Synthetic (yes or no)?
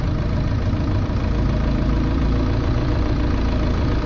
yes